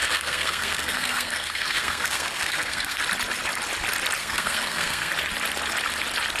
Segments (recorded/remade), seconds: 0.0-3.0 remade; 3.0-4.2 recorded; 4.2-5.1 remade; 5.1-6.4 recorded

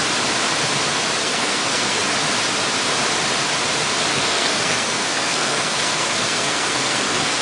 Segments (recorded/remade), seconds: 0.0-1.2 recorded; 1.2-2.0 remade; 2.0-4.1 recorded; 4.1-7.4 remade

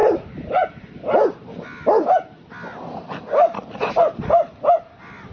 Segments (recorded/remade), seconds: 0.0-1.3 remade; 1.3-5.3 recorded